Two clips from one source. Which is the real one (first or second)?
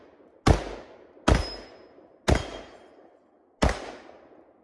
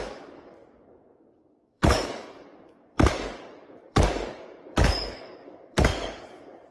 first